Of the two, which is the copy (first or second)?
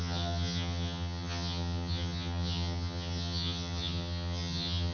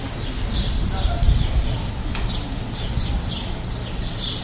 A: first